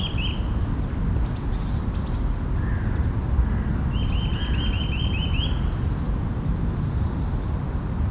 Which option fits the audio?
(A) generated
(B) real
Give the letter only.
B